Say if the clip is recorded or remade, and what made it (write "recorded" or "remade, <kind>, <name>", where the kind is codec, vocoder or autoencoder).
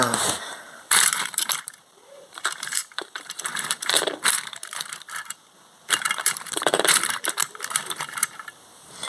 remade, vocoder, BigVGAN v2